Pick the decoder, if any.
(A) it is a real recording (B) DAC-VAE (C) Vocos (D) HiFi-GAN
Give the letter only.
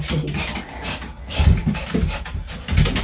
A